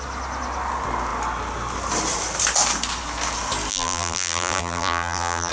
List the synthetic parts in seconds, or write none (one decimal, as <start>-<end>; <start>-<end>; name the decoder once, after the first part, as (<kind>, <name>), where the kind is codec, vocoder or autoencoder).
3.7-5.5 (vocoder, BigVGAN v2)